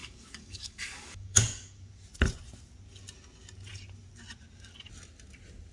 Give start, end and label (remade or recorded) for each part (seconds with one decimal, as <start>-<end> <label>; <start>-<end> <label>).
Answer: 0.0-1.9 remade; 1.9-5.7 recorded

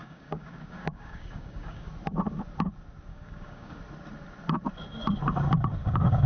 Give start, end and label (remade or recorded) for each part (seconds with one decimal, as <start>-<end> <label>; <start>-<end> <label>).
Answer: 0.0-1.9 remade; 1.9-3.1 recorded; 3.1-3.8 remade; 3.8-5.8 recorded; 5.8-6.3 remade

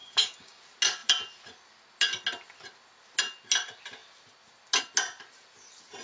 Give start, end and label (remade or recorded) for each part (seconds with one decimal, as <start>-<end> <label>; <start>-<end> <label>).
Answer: 0.0-0.6 remade; 0.6-6.0 recorded

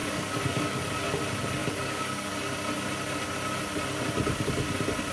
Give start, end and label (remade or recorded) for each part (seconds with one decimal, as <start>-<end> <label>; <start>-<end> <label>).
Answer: 0.0-0.8 remade; 0.8-1.6 recorded; 1.6-2.3 remade; 2.3-5.1 recorded

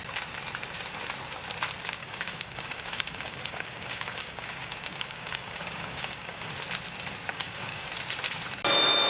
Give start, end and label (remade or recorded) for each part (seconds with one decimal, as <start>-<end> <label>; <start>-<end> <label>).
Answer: 0.0-2.0 recorded; 2.0-6.5 remade; 6.5-7.3 recorded; 7.3-7.9 remade; 7.9-9.1 recorded

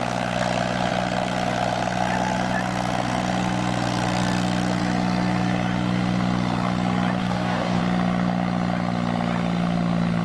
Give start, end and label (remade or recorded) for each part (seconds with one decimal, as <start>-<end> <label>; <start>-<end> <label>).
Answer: 0.0-7.2 recorded; 7.2-7.8 remade; 7.8-10.2 recorded

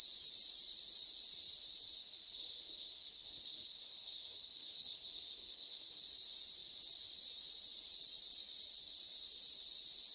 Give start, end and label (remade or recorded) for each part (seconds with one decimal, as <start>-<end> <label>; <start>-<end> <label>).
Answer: 0.0-2.0 recorded; 2.0-6.0 remade; 6.0-10.1 recorded

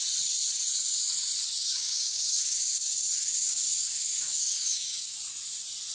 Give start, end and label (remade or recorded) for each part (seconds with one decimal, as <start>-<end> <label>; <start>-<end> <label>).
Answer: 0.0-1.7 recorded; 1.7-5.2 remade; 5.2-5.9 recorded